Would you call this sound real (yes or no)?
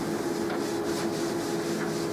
yes